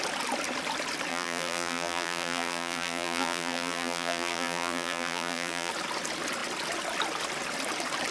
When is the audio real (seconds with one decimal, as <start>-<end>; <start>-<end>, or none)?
0.0-1.1; 5.7-8.1